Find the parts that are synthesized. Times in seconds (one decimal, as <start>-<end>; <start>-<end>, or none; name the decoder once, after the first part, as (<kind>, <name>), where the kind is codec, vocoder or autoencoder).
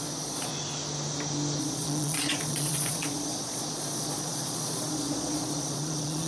0.0-0.5 (vocoder, Vocos); 1.6-6.3